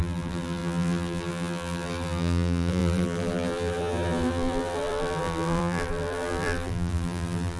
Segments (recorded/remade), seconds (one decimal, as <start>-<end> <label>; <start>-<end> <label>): 0.0-7.6 remade